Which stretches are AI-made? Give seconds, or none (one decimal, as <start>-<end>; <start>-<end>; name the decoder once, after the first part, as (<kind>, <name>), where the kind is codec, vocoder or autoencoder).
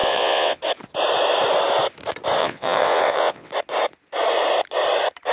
0.0-0.6 (vocoder, WaveNeXt); 2.4-3.5